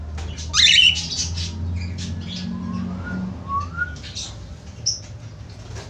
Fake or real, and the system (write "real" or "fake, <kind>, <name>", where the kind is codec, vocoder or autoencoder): real